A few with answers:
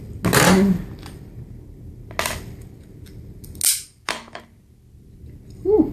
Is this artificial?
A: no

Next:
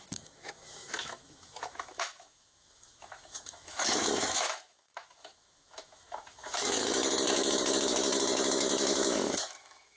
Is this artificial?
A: yes